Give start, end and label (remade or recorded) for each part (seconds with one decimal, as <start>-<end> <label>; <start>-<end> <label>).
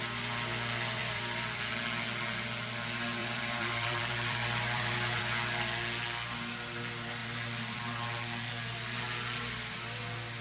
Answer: 0.0-1.0 recorded; 1.0-1.7 remade; 1.7-3.2 recorded; 3.2-5.2 remade; 5.2-7.2 recorded; 7.2-7.8 remade; 7.8-10.4 recorded